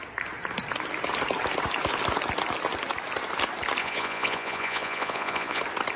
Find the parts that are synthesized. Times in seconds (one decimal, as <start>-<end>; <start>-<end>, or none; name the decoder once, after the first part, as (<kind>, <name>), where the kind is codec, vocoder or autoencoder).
3.8-5.6 (vocoder, Vocos)